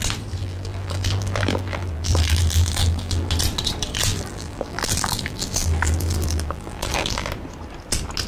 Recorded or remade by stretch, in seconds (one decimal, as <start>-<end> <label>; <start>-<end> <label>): 0.0-0.4 recorded; 0.4-3.3 remade; 3.3-4.1 recorded; 4.1-7.3 remade; 7.3-8.3 recorded